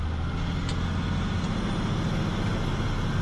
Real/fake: real